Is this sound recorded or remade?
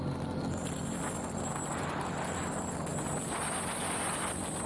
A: recorded